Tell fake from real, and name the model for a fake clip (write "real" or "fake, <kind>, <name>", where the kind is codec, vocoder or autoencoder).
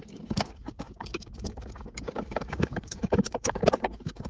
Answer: fake, codec, DAC